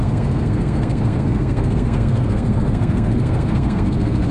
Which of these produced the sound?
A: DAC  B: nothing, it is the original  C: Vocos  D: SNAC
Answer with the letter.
D